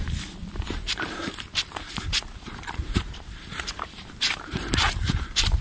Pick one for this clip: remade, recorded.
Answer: remade